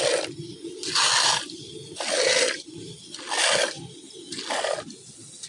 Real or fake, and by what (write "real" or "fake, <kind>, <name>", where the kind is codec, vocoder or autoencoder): real